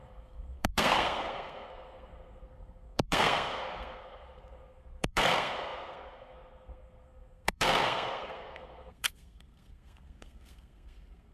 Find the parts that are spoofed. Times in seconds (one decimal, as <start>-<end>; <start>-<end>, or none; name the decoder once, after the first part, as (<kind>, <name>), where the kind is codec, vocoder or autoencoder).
0.0-11.3 (codec, SNAC)